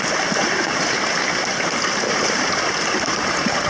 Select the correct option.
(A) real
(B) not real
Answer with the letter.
B